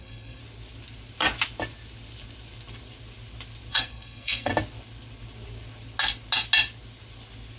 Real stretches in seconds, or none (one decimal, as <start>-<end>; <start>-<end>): 0.4-3.7; 4.5-7.6

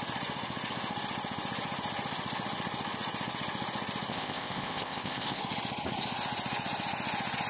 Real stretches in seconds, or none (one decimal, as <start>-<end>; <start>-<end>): 0.0-4.1; 5.4-7.5

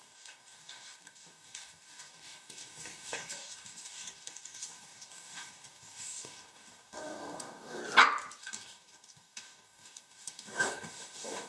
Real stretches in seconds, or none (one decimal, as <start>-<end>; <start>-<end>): 7.8-8.4

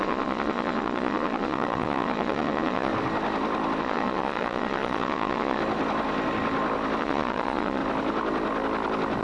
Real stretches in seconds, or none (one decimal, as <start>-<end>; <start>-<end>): 2.9-3.8; 5.6-7.0; 7.8-9.2

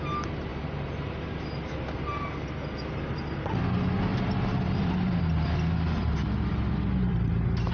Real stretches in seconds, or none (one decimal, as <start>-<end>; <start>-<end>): 0.0-4.1

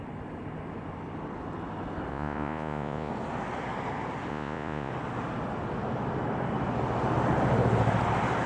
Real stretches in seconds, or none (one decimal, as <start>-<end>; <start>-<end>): 0.0-2.1; 3.1-4.3; 4.9-8.5

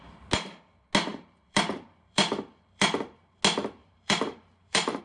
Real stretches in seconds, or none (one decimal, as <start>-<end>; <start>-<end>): 0.0-1.1; 3.4-3.8